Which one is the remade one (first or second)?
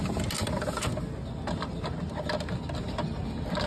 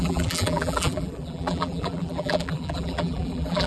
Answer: second